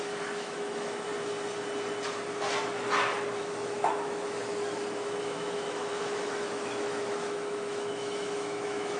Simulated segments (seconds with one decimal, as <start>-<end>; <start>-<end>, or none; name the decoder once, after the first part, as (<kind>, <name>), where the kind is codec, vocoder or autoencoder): 0.0-1.1 (autoencoder, DAC-VAE); 3.4-4.5; 5.2-9.0